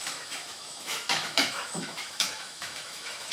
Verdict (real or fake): fake